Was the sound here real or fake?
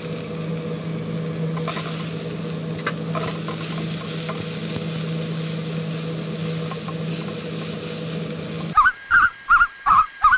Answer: real